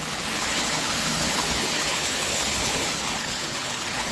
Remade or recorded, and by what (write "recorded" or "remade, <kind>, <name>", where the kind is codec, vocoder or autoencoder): remade, codec, HILCodec